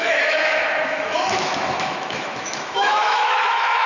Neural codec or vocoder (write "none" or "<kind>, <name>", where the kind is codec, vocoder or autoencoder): autoencoder, DAC-VAE